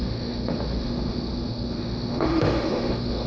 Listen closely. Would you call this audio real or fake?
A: fake